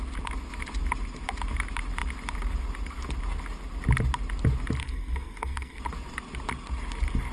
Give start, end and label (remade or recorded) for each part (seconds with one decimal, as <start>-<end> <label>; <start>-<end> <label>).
0.0-4.8 recorded; 4.8-5.8 remade; 5.8-7.3 recorded